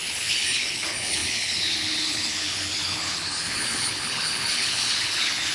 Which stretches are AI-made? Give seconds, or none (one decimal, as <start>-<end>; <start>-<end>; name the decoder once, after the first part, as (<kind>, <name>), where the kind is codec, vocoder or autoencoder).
0.0-5.5 (codec, HILCodec)